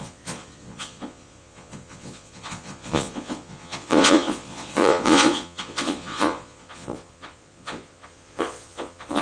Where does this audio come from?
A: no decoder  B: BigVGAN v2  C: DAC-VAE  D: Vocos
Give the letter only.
D